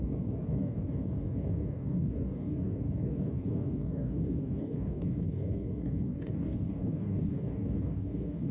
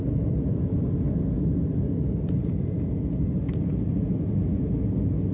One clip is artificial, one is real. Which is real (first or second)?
second